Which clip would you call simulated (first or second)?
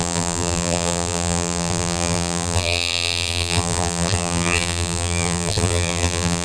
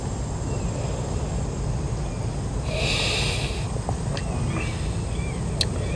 first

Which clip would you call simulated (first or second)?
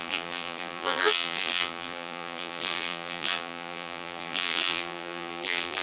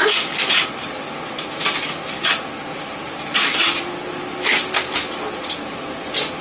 first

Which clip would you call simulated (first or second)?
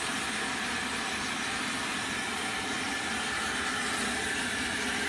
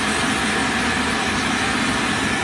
first